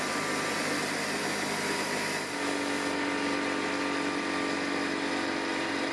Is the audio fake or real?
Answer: real